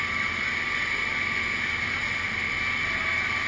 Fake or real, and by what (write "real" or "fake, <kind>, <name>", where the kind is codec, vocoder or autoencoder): real